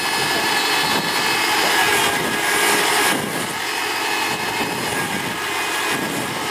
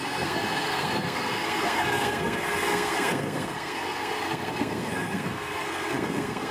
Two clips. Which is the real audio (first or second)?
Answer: first